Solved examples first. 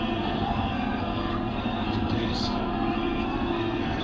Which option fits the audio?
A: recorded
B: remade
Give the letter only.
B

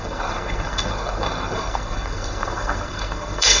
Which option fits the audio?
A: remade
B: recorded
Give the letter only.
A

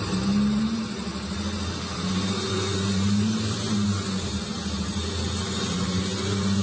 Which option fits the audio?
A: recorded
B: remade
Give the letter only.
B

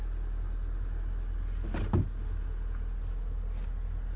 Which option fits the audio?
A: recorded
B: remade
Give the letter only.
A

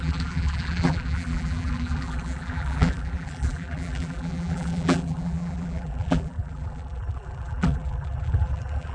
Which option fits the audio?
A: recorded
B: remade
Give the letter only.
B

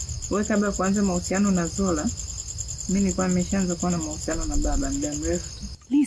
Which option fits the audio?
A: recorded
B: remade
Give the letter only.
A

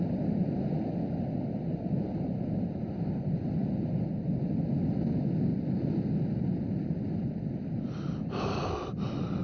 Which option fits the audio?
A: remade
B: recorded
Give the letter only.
B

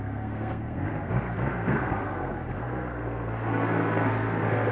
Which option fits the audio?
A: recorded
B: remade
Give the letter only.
B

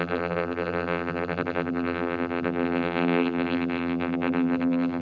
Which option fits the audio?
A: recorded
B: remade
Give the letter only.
B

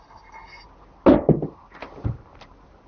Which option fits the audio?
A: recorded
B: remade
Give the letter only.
A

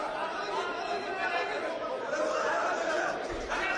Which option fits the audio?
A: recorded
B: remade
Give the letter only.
A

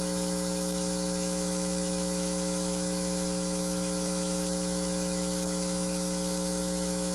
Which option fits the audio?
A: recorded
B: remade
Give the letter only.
B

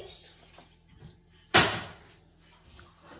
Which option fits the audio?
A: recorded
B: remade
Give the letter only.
A